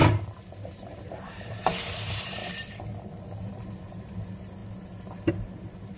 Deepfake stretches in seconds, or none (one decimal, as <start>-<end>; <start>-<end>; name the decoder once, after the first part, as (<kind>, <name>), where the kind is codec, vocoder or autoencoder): 0.0-2.4 (vocoder, BigVGAN v2); 3.2-6.0